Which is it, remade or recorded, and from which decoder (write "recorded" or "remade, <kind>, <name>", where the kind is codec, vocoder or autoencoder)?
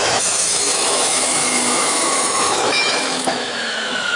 remade, autoencoder, DAC-VAE